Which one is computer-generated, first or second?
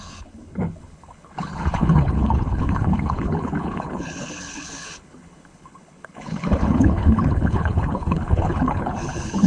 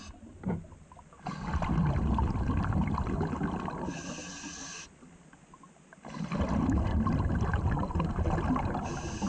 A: first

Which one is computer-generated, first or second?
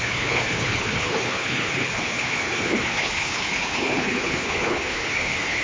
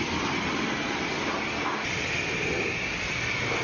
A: first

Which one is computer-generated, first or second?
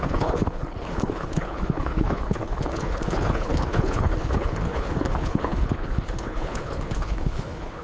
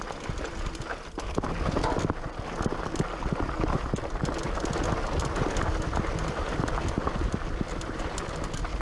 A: first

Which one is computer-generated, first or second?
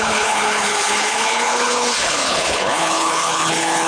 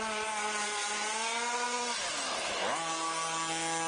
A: first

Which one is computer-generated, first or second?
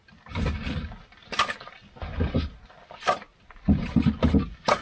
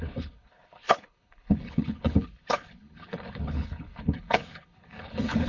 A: second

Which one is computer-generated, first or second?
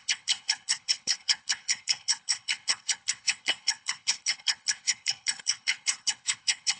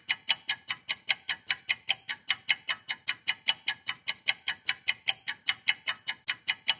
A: first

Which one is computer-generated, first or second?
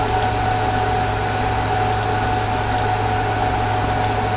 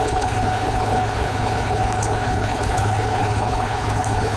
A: second